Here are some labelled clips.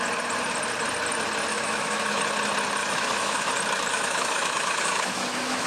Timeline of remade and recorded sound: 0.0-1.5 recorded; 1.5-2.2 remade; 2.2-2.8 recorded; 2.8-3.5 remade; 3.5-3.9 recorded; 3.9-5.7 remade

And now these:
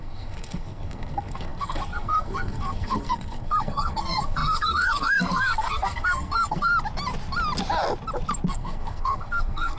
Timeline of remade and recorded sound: 0.0-6.7 remade; 6.7-8.5 recorded; 8.5-9.8 remade

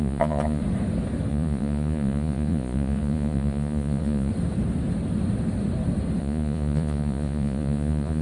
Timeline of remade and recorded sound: 0.0-0.6 remade; 0.6-1.3 recorded; 1.3-4.3 remade; 4.3-6.2 recorded; 6.2-8.2 remade

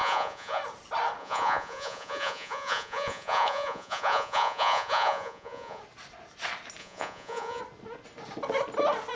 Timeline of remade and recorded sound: 0.0-0.6 remade; 0.6-1.2 recorded; 1.2-5.8 remade; 5.8-6.8 recorded; 6.8-7.6 remade; 7.6-9.2 recorded